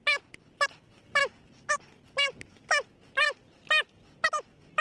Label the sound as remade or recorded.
recorded